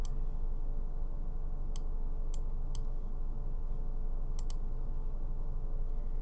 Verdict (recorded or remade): recorded